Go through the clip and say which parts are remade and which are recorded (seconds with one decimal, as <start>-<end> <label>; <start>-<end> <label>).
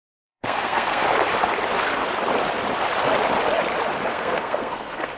0.0-1.0 remade; 1.0-4.1 recorded; 4.1-5.2 remade